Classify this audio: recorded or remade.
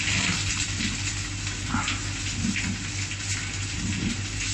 recorded